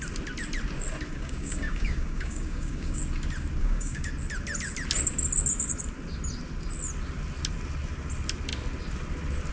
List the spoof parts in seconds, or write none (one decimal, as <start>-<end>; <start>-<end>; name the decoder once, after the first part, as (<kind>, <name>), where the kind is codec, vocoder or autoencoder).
1.1-3.0 (codec, DAC); 3.6-4.1